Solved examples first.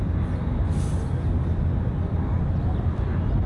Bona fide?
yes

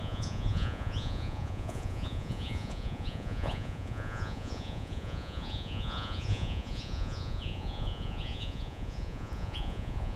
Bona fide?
no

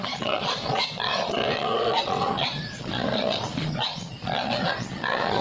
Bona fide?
no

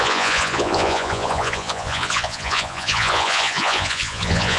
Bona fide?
no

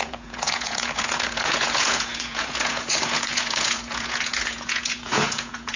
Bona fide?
no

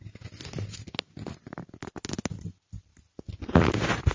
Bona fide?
yes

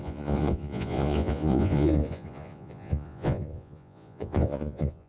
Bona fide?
no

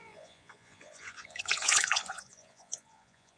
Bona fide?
no